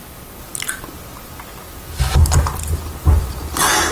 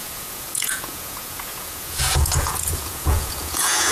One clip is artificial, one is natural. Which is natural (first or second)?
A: first